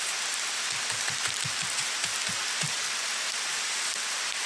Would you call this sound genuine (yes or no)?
yes